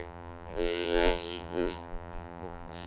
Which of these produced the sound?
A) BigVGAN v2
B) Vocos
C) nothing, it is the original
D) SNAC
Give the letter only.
A